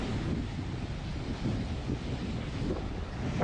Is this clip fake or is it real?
real